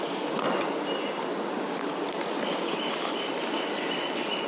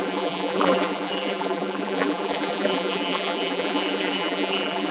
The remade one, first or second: second